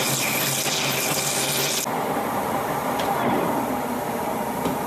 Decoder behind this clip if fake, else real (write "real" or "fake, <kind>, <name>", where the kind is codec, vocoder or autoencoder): real